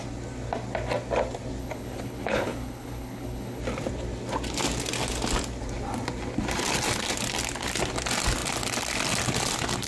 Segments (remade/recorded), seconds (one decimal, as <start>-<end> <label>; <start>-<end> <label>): 0.0-1.6 recorded; 1.6-3.6 remade; 3.6-9.9 recorded